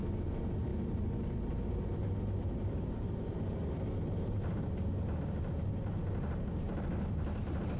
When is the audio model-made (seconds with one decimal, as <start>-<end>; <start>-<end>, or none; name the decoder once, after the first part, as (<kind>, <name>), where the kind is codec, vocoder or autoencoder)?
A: none